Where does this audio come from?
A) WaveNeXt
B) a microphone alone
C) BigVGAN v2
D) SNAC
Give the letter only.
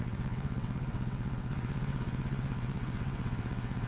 A